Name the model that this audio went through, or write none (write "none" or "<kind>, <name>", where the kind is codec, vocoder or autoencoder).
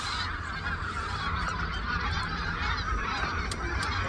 vocoder, BigVGAN v2